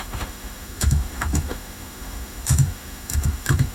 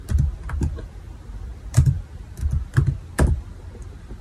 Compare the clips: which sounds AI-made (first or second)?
first